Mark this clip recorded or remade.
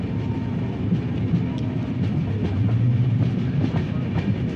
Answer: recorded